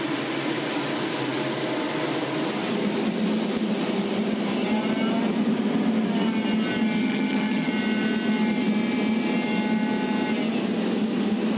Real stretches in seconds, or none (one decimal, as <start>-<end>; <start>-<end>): 0.0-7.0; 7.7-11.6

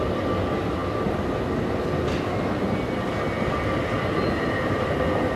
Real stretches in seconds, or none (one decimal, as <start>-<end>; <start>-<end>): 0.0-5.4

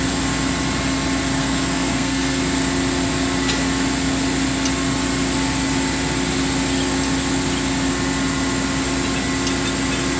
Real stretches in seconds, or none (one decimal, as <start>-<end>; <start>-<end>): 0.0-1.4; 2.4-10.2

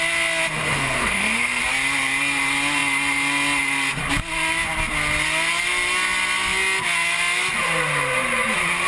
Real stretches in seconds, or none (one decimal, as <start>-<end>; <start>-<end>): 0.0-0.7; 1.6-8.9

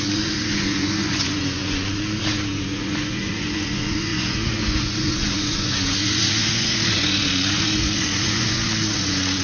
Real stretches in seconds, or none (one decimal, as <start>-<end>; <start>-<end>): none

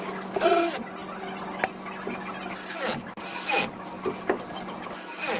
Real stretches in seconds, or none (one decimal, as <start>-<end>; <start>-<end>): 0.0-5.4

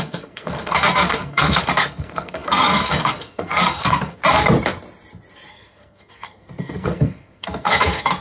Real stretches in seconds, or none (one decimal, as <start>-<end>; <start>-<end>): 4.2-5.5